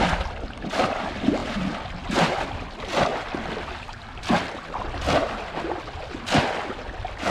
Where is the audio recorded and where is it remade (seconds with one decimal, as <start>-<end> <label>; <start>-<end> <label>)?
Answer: 0.0-7.3 recorded

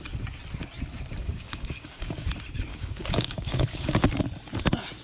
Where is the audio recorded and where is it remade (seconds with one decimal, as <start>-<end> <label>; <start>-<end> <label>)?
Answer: 0.0-1.2 recorded; 1.2-2.3 remade; 2.3-2.7 recorded; 2.7-4.1 remade; 4.1-5.0 recorded